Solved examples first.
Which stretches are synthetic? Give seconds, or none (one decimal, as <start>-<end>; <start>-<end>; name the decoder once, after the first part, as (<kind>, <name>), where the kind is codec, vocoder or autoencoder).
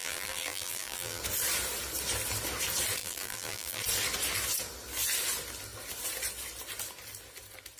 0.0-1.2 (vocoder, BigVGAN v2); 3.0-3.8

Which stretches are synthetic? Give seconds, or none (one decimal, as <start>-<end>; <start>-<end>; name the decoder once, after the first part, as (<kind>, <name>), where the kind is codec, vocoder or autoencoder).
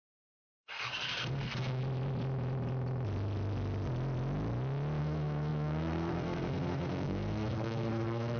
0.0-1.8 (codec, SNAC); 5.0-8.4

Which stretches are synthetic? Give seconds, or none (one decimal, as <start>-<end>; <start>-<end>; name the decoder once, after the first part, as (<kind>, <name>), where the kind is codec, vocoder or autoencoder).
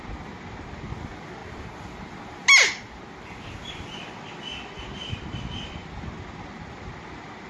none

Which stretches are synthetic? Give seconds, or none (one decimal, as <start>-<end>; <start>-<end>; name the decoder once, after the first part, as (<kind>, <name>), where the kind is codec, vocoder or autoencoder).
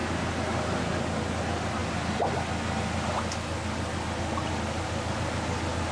none